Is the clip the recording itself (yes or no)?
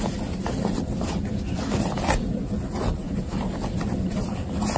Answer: yes